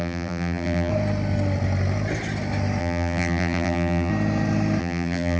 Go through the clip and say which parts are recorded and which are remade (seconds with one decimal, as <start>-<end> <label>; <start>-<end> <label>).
0.0-0.9 remade; 0.9-2.8 recorded; 2.8-4.1 remade; 4.1-4.8 recorded; 4.8-5.4 remade